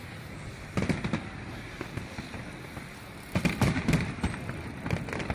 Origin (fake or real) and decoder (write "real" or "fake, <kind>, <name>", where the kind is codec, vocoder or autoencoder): real